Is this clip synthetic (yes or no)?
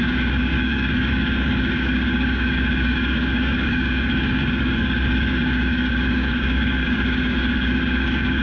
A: yes